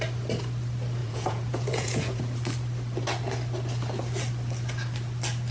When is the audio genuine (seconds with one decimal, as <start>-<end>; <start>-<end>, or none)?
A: 0.0-1.0; 2.2-5.5